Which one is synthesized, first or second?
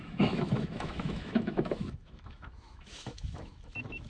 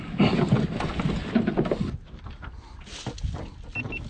first